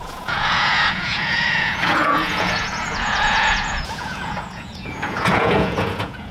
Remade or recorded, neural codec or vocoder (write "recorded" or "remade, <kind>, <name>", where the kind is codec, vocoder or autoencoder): remade, vocoder, Vocos